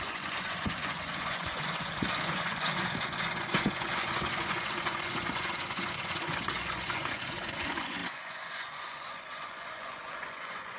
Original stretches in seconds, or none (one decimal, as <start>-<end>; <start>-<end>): none